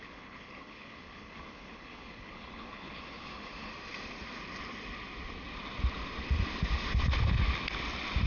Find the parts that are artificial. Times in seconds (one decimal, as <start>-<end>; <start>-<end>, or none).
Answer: 0.0-3.7